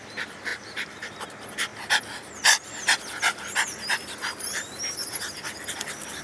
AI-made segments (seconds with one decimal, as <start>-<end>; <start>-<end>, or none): 0.5-1.1